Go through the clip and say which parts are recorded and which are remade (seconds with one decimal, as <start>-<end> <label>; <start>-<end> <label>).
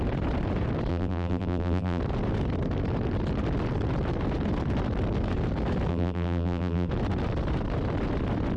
0.0-0.9 recorded; 0.9-2.0 remade; 2.0-5.9 recorded; 5.9-6.9 remade; 6.9-8.6 recorded